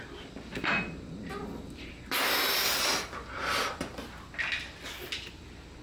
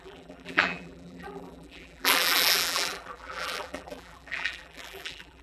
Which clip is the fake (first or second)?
second